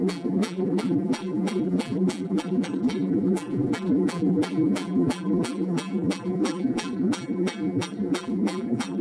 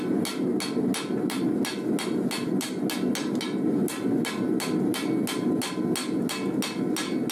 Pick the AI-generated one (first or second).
first